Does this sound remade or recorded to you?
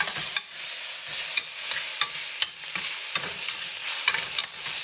recorded